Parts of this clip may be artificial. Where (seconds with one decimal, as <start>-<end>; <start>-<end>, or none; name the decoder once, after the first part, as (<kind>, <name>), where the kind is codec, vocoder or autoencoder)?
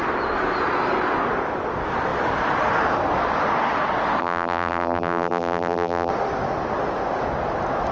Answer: 4.2-6.1 (vocoder, BigVGAN v2)